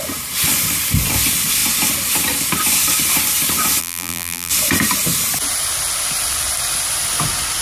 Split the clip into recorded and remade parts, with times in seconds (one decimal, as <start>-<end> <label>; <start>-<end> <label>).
0.0-3.8 recorded; 3.8-4.5 remade; 4.5-7.6 recorded